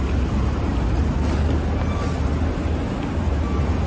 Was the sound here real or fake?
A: real